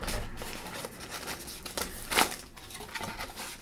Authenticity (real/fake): real